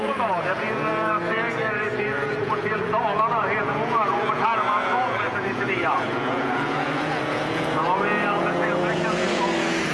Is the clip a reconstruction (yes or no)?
yes